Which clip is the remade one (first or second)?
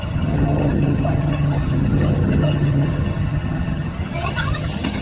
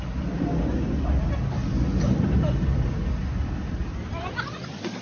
first